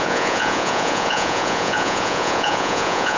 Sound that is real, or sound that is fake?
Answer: fake